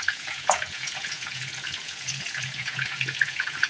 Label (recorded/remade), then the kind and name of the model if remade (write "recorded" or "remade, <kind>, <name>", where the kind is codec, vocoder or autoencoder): remade, vocoder, Vocos